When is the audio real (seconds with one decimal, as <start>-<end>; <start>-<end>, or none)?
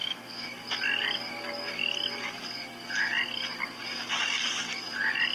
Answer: 0.6-5.3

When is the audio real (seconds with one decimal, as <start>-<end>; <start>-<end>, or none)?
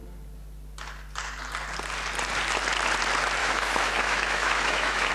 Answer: 0.0-3.4